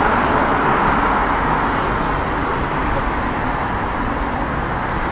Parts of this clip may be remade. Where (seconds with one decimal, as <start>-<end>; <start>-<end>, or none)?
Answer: none